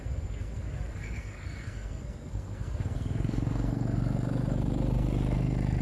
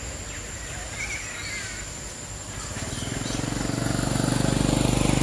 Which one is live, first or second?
second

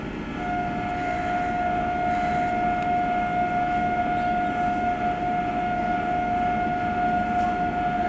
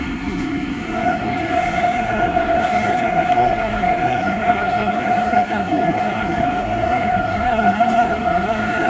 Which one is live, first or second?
first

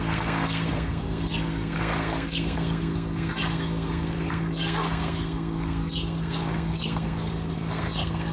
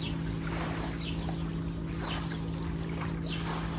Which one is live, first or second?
second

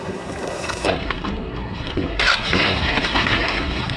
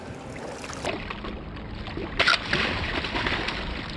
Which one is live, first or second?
second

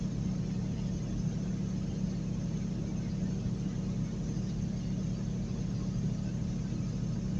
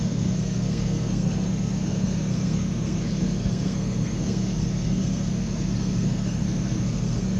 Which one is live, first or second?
first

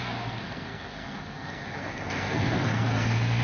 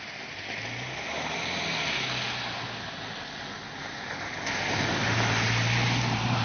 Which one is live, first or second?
second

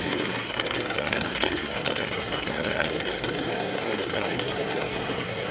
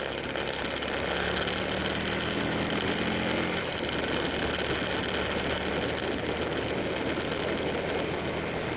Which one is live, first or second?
second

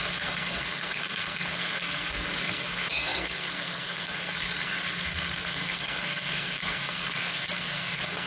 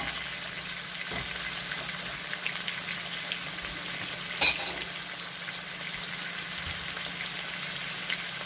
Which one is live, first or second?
second